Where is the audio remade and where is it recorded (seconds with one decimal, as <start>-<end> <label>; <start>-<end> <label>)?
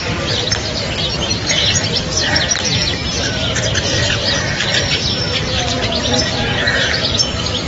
0.0-7.7 recorded